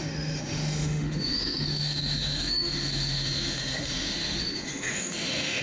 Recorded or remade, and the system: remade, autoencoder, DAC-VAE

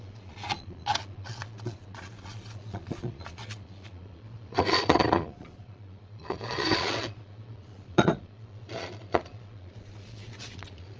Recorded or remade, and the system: remade, vocoder, Vocos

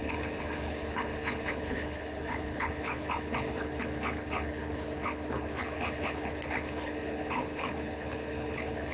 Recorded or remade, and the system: remade, codec, HILCodec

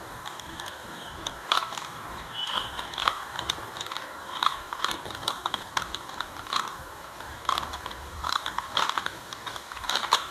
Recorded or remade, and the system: remade, codec, DAC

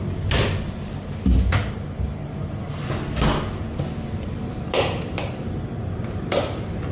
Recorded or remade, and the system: recorded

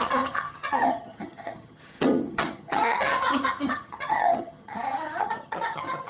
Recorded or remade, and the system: remade, vocoder, HiFi-GAN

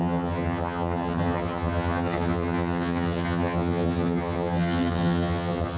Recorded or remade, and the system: remade, vocoder, HiFi-GAN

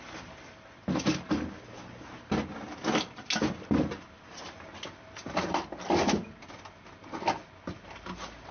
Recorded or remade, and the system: recorded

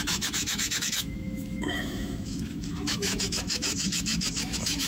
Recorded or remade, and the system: remade, autoencoder, DAC-VAE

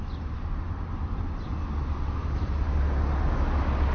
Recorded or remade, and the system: recorded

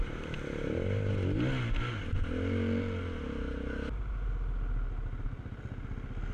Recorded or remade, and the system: recorded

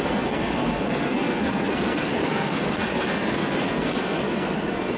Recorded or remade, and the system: remade, codec, SNAC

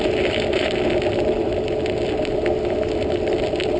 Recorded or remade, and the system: recorded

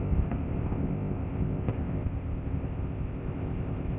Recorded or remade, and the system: remade, codec, ZipCodec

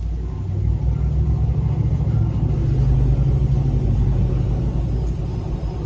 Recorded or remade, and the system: recorded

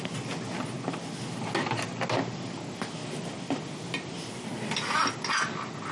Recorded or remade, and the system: recorded